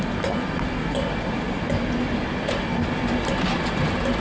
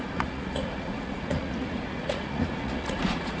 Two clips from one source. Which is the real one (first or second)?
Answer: first